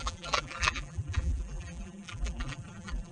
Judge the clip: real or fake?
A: fake